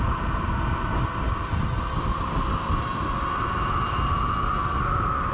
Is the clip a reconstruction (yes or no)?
no